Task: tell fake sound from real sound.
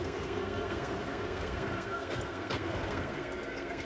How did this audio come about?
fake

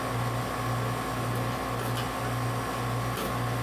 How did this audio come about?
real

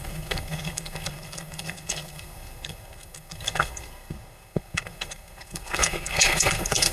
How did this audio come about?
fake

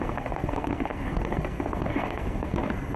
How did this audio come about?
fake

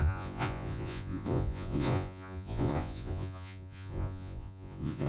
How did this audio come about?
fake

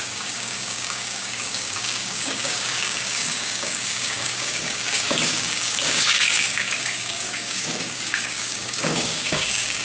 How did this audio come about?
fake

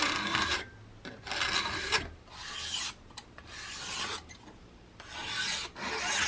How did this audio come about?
real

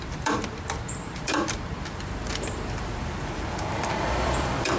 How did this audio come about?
fake